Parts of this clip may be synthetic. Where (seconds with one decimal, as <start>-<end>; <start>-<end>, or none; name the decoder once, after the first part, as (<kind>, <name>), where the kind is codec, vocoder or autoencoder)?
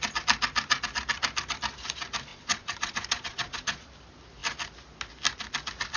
2.3-3.9 (vocoder, Vocos)